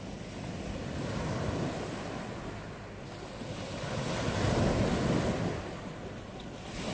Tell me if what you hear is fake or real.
real